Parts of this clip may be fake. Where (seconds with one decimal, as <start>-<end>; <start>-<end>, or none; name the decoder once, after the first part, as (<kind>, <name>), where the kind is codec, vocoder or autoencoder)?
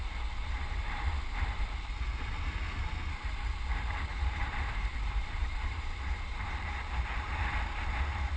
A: 4.1-7.4 (vocoder, BigVGAN v2)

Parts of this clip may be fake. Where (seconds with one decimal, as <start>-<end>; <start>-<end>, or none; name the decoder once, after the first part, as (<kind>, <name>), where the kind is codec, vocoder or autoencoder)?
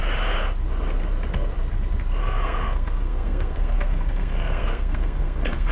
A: 2.2-5.7 (codec, SNAC)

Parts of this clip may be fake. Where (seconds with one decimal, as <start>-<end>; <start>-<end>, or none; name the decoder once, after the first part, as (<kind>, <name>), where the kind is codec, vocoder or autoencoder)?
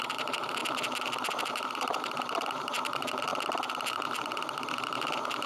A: 0.0-0.6 (vocoder, BigVGAN v2); 1.4-3.3; 3.9-5.5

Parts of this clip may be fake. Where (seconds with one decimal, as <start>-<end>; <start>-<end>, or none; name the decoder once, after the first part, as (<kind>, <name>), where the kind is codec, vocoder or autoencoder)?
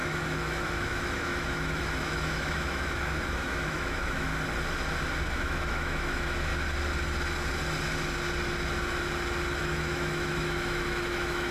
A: 0.0-4.3 (autoencoder, DAC-VAE); 5.2-6.5; 9.6-11.5